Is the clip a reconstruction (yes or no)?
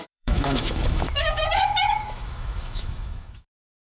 yes